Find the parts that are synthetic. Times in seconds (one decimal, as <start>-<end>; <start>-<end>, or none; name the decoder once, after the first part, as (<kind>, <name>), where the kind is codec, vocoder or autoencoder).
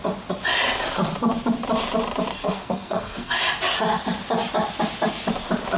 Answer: 2.3-3.4 (codec, SNAC)